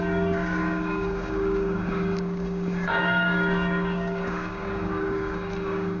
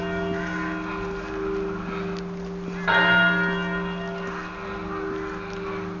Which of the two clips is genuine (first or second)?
second